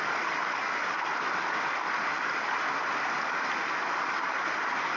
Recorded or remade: recorded